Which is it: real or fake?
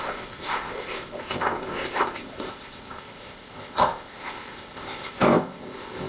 fake